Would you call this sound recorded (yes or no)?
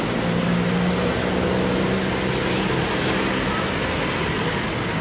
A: yes